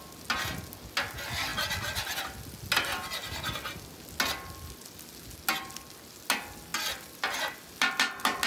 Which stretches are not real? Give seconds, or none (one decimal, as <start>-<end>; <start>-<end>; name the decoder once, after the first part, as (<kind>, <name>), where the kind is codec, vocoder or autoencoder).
none